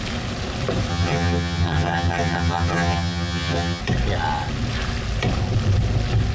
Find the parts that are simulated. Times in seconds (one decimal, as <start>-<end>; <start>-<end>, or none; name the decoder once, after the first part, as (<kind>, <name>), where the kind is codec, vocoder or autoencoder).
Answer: 0.9-3.8 (vocoder, HiFi-GAN)